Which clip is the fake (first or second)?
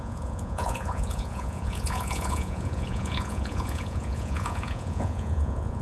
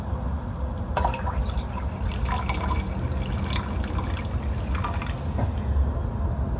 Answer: first